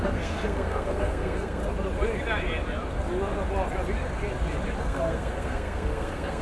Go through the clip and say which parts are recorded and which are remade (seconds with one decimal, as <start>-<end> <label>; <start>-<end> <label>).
0.0-1.6 remade; 1.6-4.8 recorded; 4.8-6.4 remade